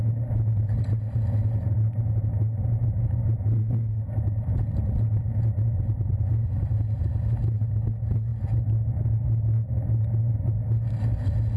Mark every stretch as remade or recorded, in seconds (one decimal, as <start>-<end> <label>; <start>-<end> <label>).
0.0-11.6 recorded